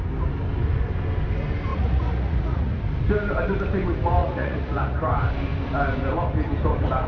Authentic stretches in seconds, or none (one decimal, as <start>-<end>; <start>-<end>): 0.0-1.7; 2.8-4.2; 5.0-7.1